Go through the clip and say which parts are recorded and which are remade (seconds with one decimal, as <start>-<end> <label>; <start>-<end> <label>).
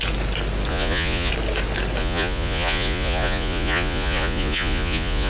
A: 0.0-0.7 recorded; 0.7-1.3 remade; 1.3-2.0 recorded; 2.0-5.3 remade